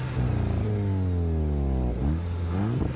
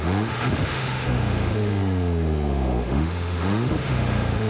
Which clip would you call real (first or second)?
first